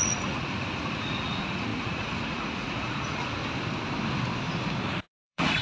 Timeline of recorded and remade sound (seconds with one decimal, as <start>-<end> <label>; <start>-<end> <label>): 0.0-3.4 remade; 3.4-4.8 recorded; 4.8-5.6 remade